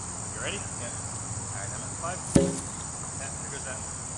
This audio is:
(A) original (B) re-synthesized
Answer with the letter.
A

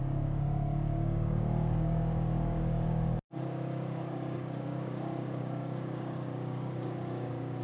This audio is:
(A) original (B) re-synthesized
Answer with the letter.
B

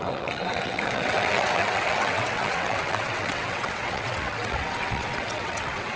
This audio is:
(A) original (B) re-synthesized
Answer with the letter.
B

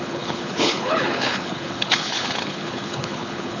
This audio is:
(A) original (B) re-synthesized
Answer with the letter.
B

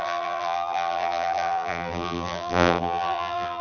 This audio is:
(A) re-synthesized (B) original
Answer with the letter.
A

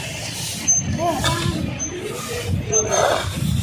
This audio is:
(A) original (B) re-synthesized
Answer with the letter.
A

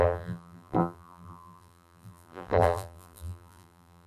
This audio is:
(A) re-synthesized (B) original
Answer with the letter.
A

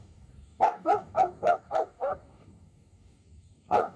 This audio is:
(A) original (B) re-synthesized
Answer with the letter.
B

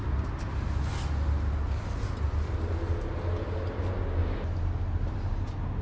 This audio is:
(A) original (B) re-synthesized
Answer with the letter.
A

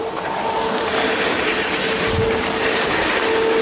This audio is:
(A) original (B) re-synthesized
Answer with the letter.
A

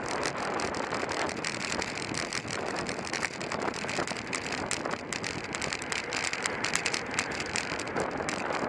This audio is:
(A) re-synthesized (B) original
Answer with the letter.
B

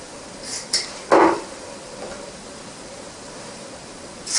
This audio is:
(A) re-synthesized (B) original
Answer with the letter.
B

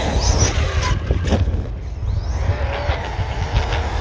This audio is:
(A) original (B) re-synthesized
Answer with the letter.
A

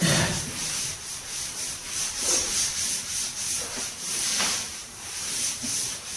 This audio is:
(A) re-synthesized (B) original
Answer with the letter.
A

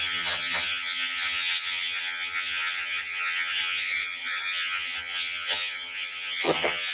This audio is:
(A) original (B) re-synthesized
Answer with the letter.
B